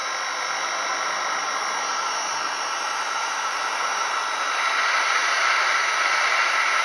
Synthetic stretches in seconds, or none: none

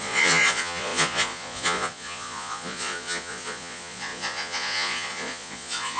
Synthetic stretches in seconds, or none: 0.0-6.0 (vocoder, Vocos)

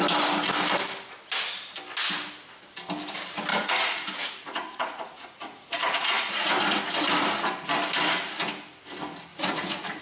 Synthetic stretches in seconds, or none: 3.5-6.5 (vocoder, Vocos); 9.3-10.0

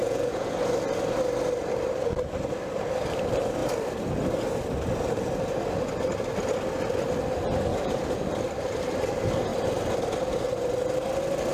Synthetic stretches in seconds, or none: 0.0-0.5 (vocoder, Vocos); 7.7-8.2

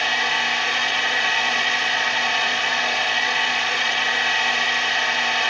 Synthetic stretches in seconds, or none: 0.8-4.1 (vocoder, Vocos)